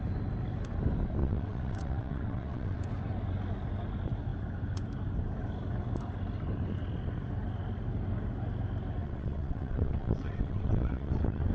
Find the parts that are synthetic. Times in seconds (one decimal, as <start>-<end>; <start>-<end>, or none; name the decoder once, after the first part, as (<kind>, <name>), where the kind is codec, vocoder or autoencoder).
1.2-2.8 (vocoder, WaveNeXt); 9.0-11.5